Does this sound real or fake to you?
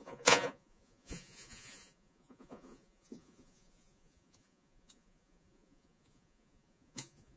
fake